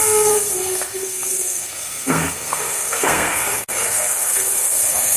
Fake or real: fake